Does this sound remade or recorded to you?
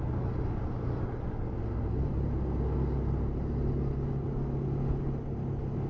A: recorded